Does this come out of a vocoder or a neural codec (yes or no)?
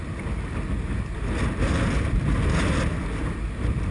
no